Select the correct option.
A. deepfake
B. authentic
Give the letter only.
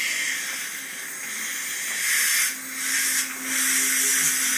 B